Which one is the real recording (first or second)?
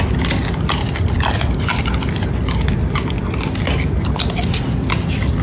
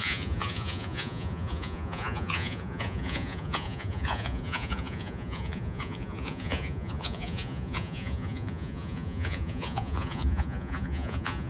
first